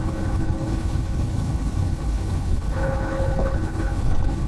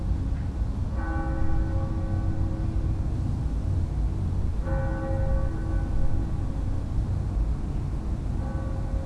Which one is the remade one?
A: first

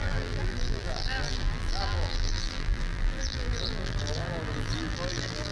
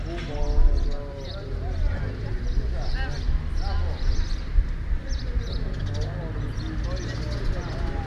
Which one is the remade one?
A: first